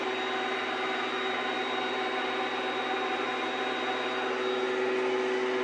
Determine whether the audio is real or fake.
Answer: real